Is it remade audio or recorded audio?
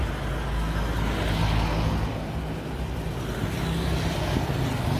recorded